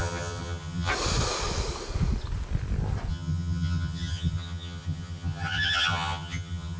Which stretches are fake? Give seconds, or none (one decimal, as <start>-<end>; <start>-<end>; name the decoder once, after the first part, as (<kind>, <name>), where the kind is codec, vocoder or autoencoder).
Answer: 0.0-0.9 (vocoder, HiFi-GAN); 3.1-6.8

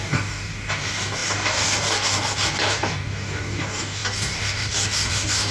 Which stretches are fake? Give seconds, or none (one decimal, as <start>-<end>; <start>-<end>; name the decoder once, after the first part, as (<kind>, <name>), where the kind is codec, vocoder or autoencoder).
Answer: 0.0-5.5 (codec, DAC)

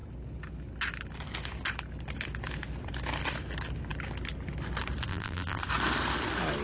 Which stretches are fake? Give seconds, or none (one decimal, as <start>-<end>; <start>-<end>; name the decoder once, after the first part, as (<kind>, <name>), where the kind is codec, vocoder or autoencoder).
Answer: 5.1-5.6 (vocoder, BigVGAN v2)